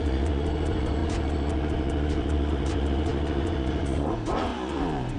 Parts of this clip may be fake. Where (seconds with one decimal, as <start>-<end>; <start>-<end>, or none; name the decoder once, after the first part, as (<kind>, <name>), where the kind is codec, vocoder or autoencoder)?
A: 0.0-5.2 (vocoder, Vocos)